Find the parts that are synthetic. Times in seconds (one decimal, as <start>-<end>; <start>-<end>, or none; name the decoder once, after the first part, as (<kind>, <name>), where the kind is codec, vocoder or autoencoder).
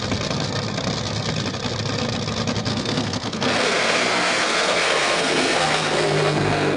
2.7-6.8 (codec, SNAC)